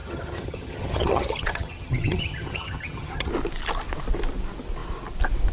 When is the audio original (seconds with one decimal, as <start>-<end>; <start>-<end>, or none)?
3.3-5.5

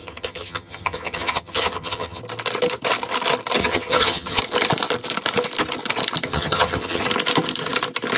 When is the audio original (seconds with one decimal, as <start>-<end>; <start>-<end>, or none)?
2.2-3.6; 4.4-6.3; 7.0-8.2

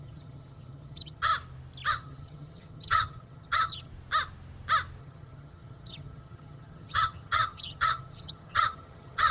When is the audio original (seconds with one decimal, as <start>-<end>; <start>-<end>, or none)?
1.3-1.9; 3.9-5.0

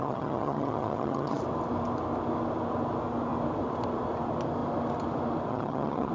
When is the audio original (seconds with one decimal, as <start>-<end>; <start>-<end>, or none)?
1.4-5.5

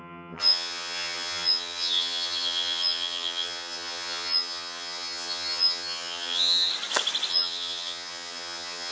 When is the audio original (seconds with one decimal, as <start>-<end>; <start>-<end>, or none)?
6.7-7.3

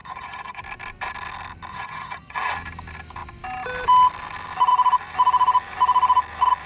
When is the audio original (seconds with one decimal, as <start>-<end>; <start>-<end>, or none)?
0.6-1.7; 2.5-6.7